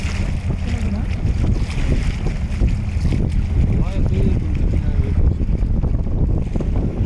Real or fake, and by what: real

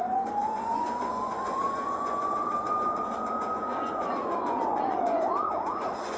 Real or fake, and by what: fake, vocoder, Vocos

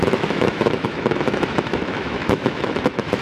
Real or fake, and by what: fake, autoencoder, DAC-VAE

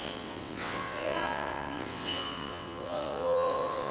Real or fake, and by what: fake, vocoder, WaveNeXt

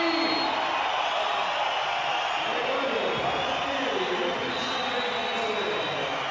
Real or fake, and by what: real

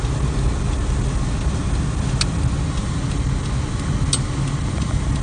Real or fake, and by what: real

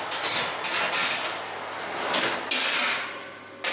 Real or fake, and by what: real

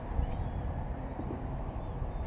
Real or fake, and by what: real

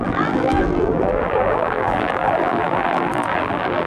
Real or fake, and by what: fake, vocoder, BigVGAN v2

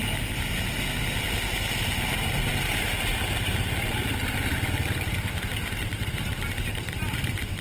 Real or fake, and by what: real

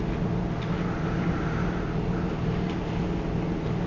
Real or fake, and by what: real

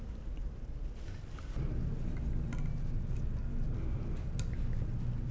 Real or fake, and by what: real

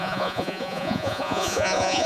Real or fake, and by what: fake, vocoder, Vocos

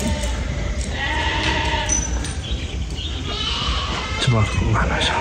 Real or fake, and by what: fake, vocoder, BigVGAN v2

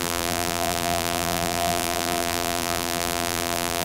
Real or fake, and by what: fake, vocoder, BigVGAN v2